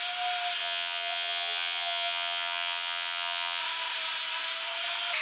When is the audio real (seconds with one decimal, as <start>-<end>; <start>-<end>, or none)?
0.0-0.6; 3.6-5.2